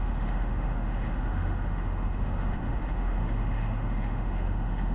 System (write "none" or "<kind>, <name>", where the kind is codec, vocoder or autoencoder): autoencoder, DAC-VAE